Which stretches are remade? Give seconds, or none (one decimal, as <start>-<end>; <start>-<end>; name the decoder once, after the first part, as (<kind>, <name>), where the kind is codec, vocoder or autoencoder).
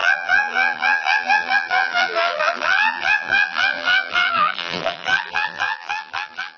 0.0-6.6 (vocoder, BigVGAN v2)